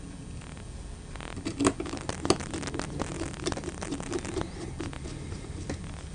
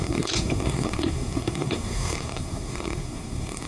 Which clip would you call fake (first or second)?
second